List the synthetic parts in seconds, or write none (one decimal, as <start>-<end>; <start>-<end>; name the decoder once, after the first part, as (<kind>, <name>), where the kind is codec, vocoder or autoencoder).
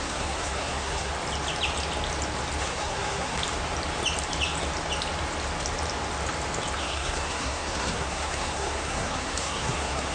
0.0-1.1 (codec, SNAC); 2.6-3.4; 6.8-10.1